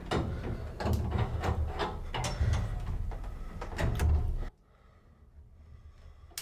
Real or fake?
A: real